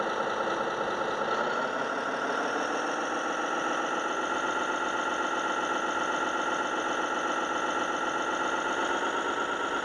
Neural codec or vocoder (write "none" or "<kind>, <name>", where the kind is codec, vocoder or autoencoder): none